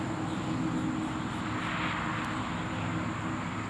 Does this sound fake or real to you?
real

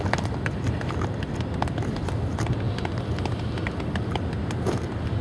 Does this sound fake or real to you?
real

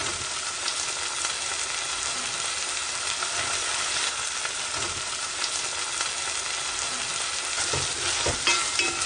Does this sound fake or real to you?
real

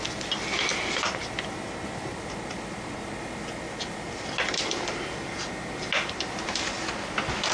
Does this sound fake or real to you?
real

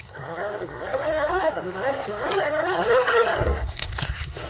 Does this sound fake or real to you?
fake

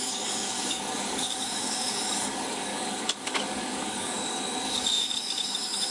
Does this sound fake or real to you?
fake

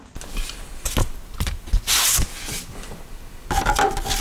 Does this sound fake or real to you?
real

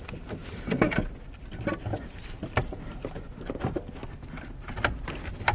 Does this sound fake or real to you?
real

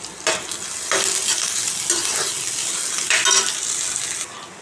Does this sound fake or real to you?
real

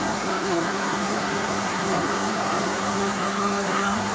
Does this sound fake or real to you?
fake